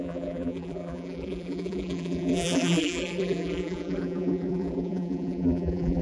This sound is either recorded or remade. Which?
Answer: remade